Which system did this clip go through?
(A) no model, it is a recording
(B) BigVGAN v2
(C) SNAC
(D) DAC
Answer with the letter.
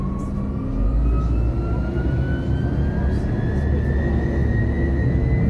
A